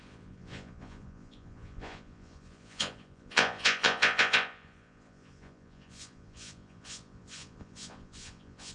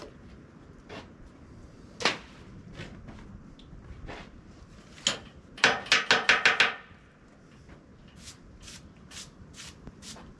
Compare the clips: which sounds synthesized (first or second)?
first